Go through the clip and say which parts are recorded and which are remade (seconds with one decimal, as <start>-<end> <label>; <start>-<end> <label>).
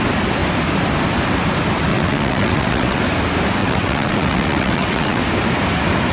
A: 0.0-1.9 recorded; 1.9-3.0 remade; 3.0-3.6 recorded; 3.6-5.2 remade; 5.2-6.1 recorded